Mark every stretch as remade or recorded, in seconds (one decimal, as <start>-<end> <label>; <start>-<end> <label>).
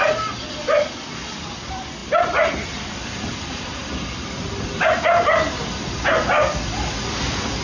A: 0.0-7.6 recorded